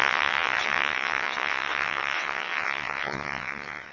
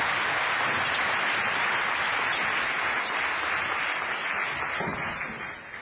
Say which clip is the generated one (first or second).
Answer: first